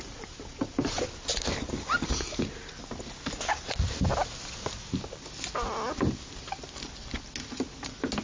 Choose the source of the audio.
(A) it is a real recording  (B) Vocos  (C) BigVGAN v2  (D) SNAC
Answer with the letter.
A